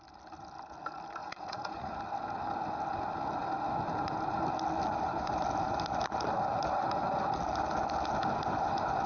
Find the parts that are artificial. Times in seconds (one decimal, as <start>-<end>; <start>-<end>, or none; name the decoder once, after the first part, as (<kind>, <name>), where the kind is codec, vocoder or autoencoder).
1.2-2.0 (vocoder, Vocos)